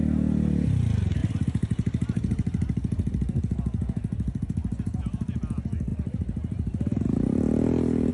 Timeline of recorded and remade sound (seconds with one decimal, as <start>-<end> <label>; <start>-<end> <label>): 0.0-8.1 recorded